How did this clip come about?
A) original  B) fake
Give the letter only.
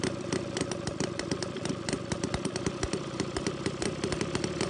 A